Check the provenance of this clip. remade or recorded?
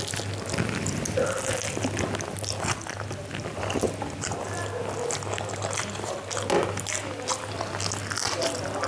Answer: recorded